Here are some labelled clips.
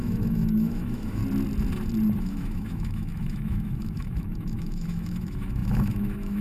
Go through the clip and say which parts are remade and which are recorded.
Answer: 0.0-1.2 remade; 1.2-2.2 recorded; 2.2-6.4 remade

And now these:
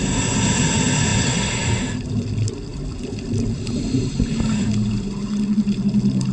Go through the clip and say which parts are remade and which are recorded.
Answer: 0.0-1.1 recorded; 1.1-1.7 remade; 1.7-2.7 recorded; 2.7-4.9 remade; 4.9-6.3 recorded

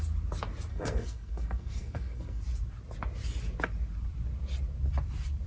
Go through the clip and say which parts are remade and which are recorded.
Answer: 0.0-0.7 recorded; 0.7-2.4 remade; 2.4-5.5 recorded

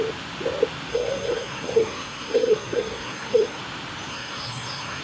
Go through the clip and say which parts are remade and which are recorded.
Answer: 0.0-0.9 recorded; 0.9-3.6 remade; 3.6-4.1 recorded; 4.1-5.0 remade

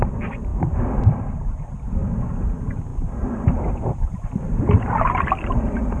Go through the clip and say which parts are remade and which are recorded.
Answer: 0.0-2.9 recorded; 2.9-4.9 remade; 4.9-6.0 recorded

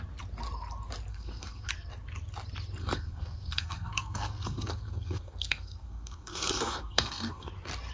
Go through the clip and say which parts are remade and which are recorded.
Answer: 0.0-1.1 recorded; 1.1-1.7 remade; 1.7-2.8 recorded; 2.8-7.5 remade; 7.5-7.9 recorded